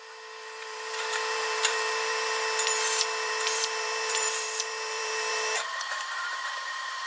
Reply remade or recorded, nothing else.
remade